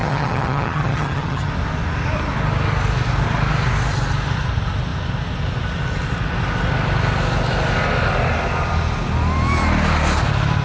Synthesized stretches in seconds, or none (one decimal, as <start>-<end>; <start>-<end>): 0.0-1.5